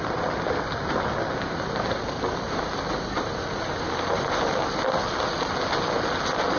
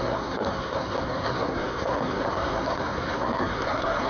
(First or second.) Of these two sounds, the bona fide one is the first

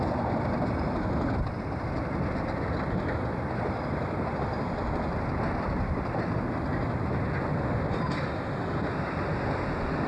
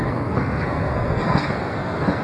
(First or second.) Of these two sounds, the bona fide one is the first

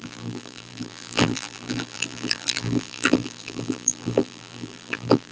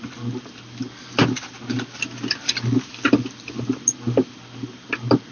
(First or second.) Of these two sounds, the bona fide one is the second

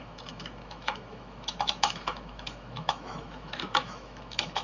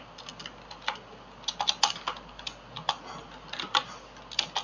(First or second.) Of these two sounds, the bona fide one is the second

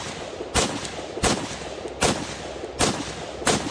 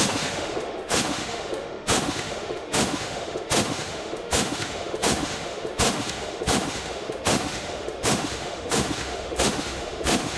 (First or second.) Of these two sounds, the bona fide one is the first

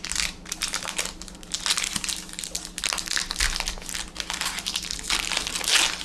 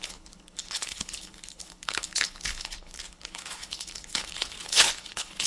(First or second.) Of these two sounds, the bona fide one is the first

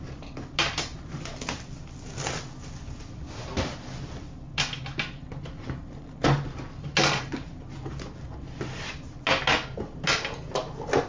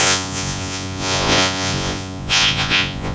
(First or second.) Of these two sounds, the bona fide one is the first